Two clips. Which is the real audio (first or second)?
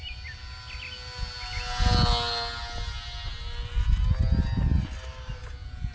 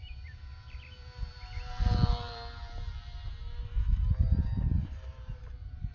first